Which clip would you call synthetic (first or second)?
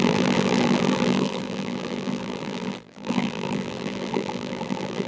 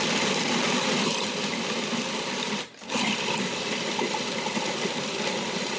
first